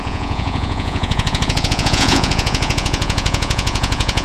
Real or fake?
fake